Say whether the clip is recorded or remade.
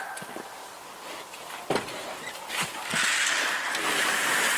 recorded